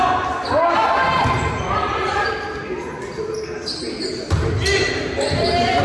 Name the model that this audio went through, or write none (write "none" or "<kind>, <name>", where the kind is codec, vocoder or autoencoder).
none